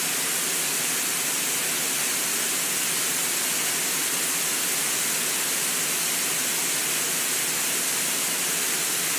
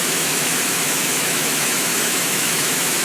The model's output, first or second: second